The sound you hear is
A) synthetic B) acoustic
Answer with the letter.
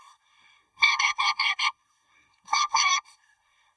A